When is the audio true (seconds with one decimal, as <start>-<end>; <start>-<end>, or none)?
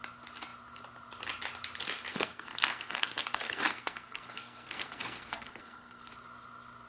0.0-2.1; 6.1-6.9